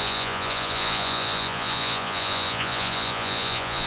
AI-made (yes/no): yes